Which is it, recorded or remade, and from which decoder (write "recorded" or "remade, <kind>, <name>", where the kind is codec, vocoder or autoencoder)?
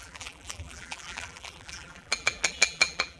remade, vocoder, BigVGAN v2